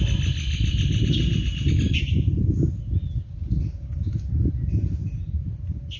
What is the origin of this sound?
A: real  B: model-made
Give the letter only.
A